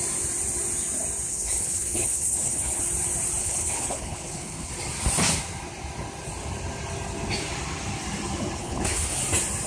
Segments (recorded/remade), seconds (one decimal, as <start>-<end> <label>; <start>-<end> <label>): 0.0-1.3 recorded; 1.3-2.8 remade; 2.8-3.4 recorded; 3.4-4.7 remade; 4.7-8.6 recorded; 8.6-9.2 remade; 9.2-9.7 recorded